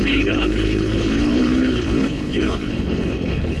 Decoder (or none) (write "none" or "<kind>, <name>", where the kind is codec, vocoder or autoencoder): codec, HILCodec